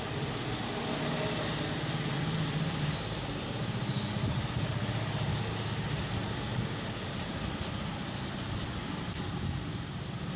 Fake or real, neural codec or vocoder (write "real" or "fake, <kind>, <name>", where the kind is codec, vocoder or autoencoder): real